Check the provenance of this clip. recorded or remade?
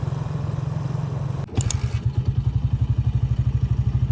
recorded